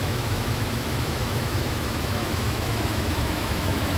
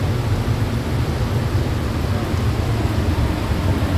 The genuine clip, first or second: second